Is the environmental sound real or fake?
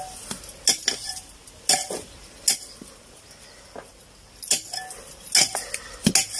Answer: real